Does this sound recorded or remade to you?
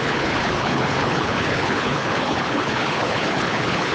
remade